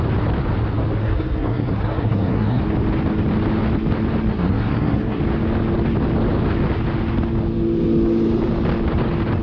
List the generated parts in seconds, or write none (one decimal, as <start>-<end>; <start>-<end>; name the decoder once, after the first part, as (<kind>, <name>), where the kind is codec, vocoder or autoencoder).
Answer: 1.0-2.6 (codec, SNAC); 4.3-5.2